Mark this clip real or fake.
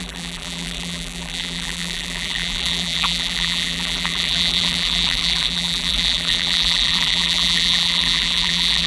fake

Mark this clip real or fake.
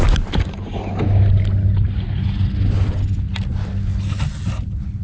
real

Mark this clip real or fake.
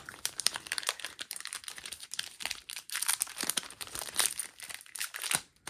fake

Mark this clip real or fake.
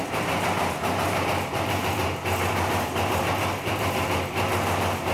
fake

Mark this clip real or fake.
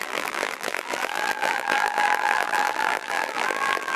fake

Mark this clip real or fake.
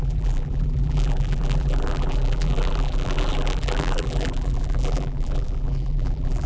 fake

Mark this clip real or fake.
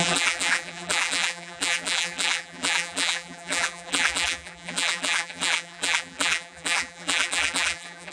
fake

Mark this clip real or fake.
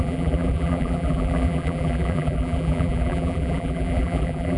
fake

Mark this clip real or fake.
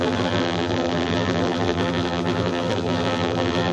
fake